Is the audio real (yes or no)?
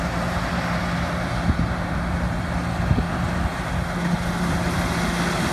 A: yes